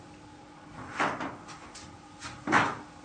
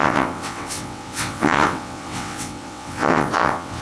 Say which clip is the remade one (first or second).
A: second